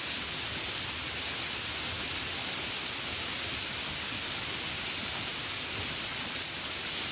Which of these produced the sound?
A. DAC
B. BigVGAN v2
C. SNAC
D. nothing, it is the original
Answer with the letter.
D